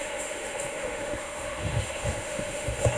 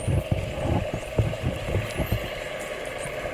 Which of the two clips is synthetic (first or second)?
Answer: first